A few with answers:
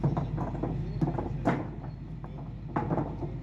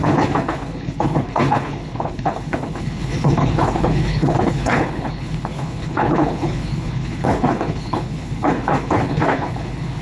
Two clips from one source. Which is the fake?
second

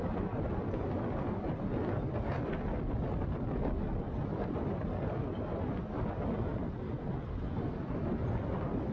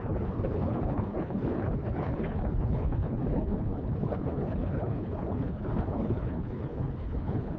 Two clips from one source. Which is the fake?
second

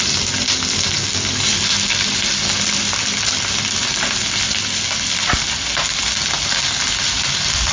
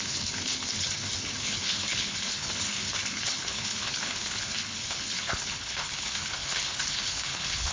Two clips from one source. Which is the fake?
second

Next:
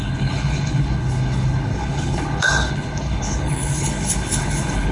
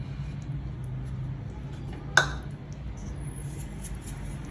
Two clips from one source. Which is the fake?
first